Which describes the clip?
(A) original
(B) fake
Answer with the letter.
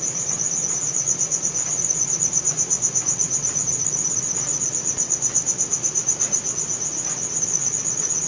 B